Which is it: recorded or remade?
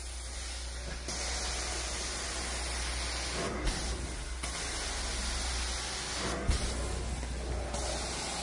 recorded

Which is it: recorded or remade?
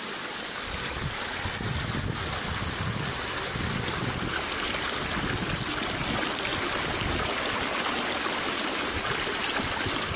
recorded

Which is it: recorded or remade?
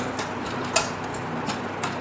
recorded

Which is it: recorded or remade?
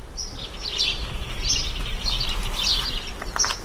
recorded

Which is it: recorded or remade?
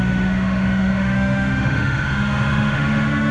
remade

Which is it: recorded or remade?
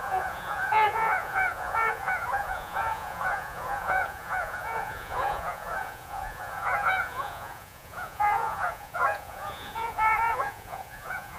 remade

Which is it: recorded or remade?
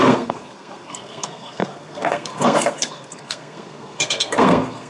remade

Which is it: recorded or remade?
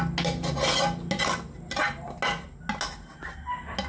recorded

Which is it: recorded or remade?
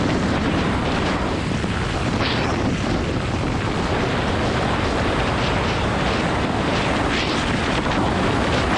recorded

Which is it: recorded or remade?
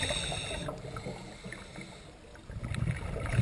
recorded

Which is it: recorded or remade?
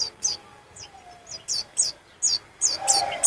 recorded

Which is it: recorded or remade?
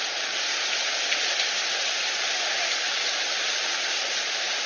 recorded